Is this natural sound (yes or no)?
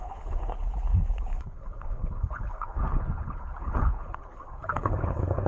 no